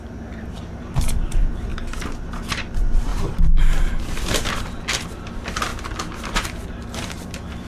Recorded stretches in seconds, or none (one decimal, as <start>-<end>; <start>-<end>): 1.7-2.2; 5.7-6.2